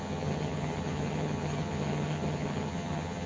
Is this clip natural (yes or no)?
no